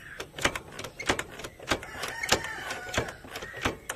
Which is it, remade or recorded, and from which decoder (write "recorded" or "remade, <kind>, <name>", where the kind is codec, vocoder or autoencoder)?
remade, vocoder, BigVGAN v2